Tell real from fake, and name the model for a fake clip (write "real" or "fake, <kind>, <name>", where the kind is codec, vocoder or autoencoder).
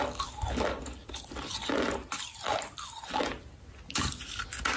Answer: real